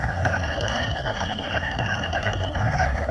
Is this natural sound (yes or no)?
no